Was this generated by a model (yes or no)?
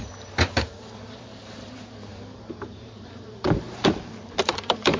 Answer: yes